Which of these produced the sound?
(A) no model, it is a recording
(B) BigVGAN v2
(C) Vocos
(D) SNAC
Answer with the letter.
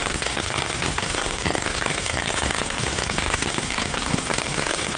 D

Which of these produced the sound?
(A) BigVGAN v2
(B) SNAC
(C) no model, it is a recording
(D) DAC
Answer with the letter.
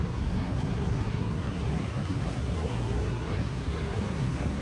B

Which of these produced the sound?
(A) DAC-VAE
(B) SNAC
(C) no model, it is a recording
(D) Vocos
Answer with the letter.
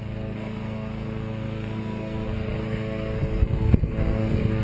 B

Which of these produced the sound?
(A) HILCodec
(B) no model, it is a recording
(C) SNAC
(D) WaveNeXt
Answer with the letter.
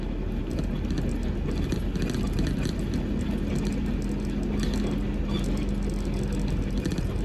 B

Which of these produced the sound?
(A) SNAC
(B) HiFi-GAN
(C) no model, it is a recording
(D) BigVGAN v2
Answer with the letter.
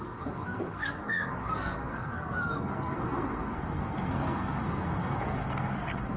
A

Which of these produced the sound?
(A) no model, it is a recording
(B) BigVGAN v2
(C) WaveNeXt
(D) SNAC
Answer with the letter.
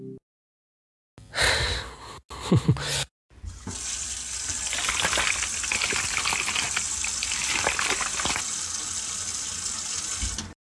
A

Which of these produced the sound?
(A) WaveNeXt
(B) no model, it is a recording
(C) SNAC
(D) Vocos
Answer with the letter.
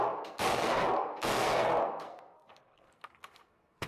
C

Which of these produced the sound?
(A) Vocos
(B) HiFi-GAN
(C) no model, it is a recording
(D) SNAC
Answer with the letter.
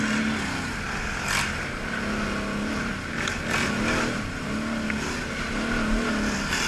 C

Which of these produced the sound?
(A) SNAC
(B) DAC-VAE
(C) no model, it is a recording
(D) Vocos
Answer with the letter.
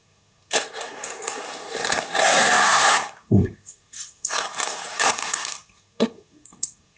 A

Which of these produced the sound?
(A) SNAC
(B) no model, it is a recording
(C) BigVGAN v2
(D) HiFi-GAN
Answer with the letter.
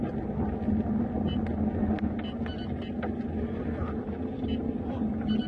B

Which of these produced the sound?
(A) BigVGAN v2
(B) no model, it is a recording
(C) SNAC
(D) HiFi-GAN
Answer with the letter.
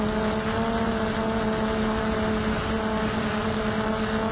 B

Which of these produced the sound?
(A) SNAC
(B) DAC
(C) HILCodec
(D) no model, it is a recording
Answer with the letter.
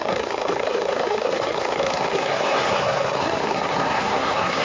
A